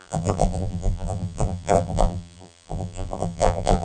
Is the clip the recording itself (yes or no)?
no